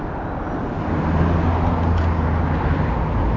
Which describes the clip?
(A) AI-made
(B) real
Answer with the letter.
B